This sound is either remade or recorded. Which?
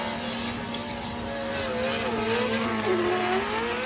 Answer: recorded